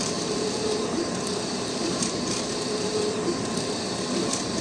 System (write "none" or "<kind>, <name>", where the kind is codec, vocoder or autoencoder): vocoder, BigVGAN v2